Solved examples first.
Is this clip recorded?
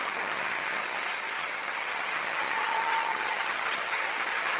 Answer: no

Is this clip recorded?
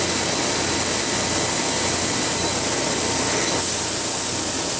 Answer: yes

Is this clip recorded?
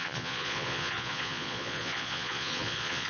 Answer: no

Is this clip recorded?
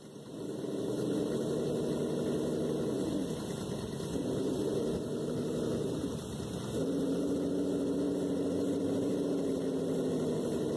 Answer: yes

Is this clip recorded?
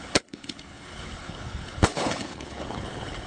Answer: no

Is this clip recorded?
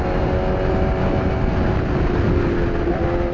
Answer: yes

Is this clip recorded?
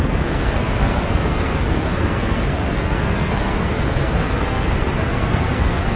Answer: no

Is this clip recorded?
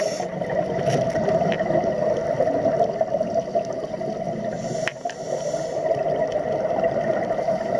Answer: yes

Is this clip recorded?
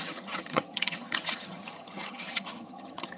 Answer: no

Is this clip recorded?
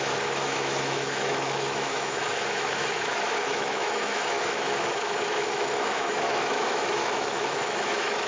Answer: no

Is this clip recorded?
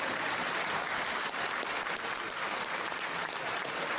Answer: yes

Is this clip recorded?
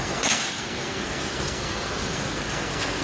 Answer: no